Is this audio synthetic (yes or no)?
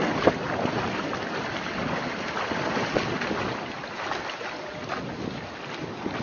no